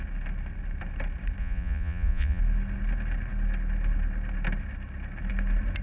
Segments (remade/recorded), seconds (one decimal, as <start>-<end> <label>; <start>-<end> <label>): 0.0-1.4 recorded; 1.4-2.4 remade; 2.4-5.8 recorded